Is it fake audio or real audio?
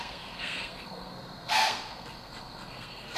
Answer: fake